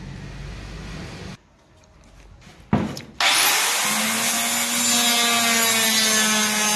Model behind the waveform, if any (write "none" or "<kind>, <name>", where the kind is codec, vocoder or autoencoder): none